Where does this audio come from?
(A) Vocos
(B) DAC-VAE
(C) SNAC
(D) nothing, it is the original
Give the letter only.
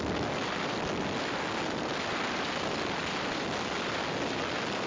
D